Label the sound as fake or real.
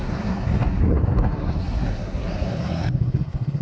fake